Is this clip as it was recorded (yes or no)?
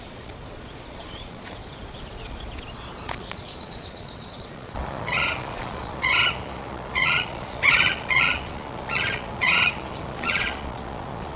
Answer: no